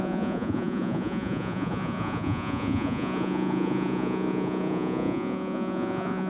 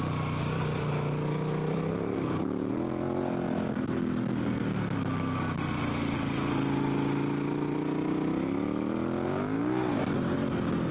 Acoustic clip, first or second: second